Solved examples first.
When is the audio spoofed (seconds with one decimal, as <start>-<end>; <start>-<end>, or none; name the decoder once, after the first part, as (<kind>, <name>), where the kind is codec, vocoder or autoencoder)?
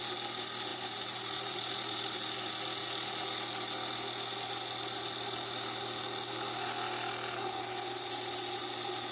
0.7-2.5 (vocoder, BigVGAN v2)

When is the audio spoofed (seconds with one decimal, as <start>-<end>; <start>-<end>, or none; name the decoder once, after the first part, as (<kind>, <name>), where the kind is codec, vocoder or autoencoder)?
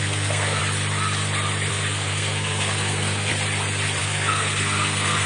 0.0-0.6 (codec, SNAC); 1.7-3.3; 4.0-5.3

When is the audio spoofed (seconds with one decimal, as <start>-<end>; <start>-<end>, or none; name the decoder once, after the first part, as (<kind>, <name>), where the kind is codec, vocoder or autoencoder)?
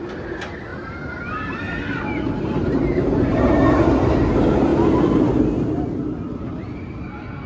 0.7-3.4 (vocoder, BigVGAN v2)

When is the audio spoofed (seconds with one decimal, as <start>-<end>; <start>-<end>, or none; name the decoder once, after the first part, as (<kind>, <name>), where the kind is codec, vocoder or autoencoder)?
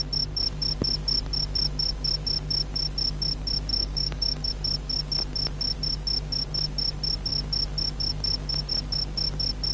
3.7-4.5 (codec, DAC)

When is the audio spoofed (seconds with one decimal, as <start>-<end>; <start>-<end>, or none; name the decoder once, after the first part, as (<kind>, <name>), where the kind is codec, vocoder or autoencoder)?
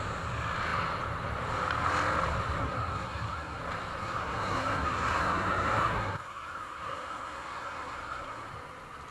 2.6-3.6 (codec, SNAC); 4.0-8.5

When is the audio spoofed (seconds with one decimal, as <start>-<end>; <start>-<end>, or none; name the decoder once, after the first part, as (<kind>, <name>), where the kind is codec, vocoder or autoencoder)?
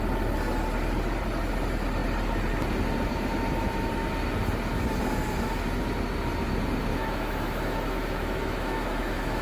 3.1-3.9 (autoencoder, DAC-VAE); 6.9-9.4